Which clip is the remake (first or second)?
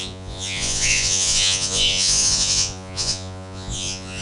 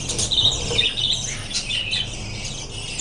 first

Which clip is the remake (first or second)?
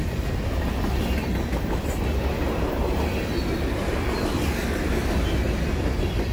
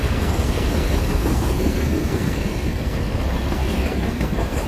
second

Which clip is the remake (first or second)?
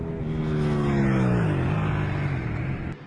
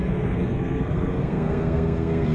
second